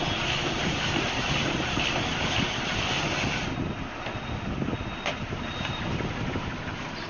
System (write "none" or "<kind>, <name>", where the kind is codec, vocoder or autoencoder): none